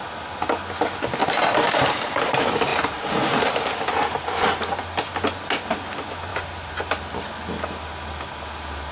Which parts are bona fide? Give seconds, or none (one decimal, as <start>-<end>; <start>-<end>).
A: 0.0-1.2; 2.1-2.7; 3.5-6.3; 7.1-8.9